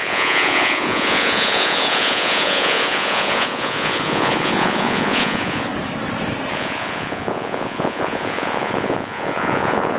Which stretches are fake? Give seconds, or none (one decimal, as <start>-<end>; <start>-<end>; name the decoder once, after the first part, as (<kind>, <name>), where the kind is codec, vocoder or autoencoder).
0.0-5.7 (vocoder, Vocos); 6.5-10.0